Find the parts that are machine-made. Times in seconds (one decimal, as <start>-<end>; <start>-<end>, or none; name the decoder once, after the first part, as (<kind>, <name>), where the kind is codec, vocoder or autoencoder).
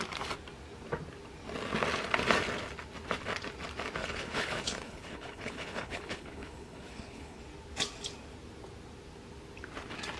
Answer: 4.0-7.4 (codec, HILCodec)